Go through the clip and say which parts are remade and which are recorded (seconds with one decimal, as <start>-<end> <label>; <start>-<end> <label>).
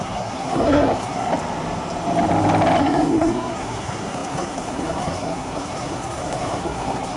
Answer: 0.0-1.3 remade; 1.3-2.8 recorded; 2.8-7.2 remade